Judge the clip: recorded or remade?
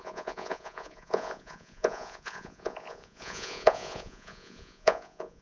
remade